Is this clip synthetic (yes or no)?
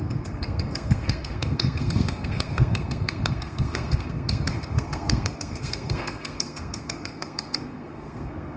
yes